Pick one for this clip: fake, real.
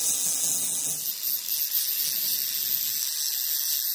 real